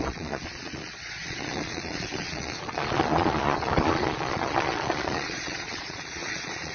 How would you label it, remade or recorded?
remade